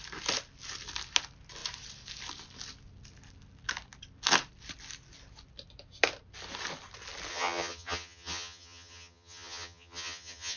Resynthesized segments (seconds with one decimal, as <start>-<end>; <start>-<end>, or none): 7.3-10.6